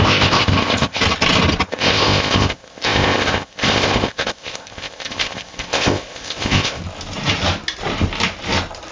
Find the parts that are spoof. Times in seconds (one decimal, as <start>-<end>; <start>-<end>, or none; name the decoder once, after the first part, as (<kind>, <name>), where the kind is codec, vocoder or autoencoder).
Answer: 0.0-1.0 (codec, ZipCodec); 1.7-6.8